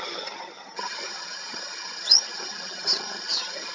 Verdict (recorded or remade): remade